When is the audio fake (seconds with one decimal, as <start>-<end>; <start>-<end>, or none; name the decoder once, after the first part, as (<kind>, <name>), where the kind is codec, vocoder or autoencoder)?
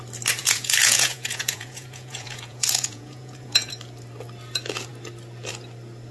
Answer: 0.4-3.7 (vocoder, Vocos)